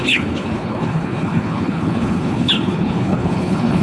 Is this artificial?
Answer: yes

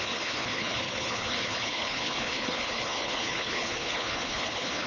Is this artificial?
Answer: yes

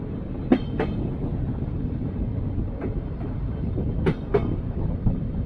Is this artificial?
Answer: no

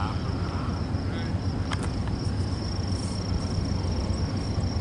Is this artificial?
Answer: no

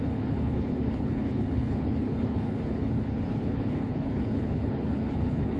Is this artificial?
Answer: yes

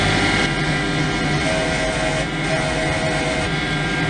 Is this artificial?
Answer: no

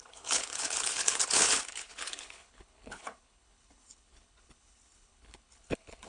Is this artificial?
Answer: yes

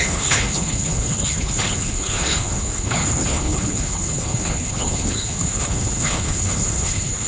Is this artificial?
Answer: yes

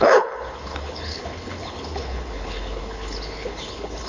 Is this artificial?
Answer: yes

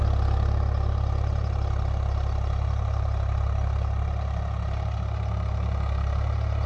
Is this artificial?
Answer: no